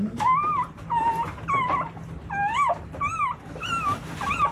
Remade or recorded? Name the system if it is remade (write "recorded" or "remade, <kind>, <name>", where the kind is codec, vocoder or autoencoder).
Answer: recorded